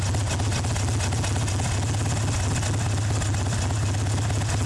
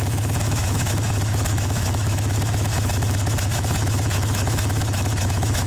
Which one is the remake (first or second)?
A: second